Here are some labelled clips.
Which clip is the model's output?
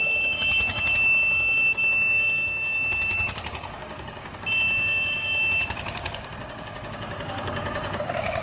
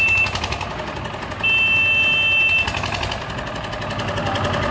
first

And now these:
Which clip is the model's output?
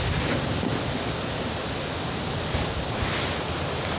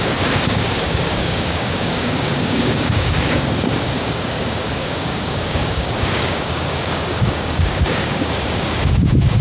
second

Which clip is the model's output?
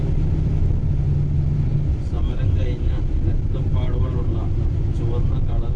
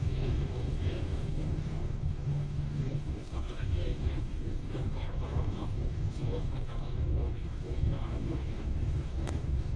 second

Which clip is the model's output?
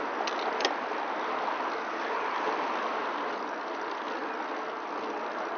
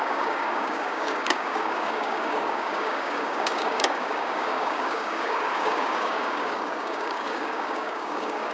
second